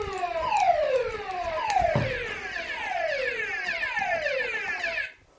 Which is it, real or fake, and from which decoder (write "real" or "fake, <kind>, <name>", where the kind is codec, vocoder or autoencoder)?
real